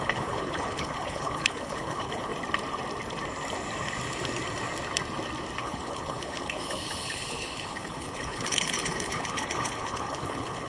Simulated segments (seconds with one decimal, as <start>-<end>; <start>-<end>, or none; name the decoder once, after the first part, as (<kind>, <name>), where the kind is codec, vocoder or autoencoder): 0.0-2.3 (codec, HILCodec); 5.6-10.7